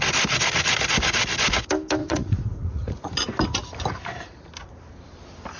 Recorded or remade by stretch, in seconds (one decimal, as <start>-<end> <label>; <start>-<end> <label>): 0.0-2.0 recorded; 2.0-3.1 remade; 3.1-5.6 recorded